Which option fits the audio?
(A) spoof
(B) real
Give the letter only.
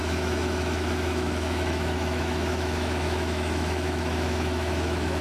A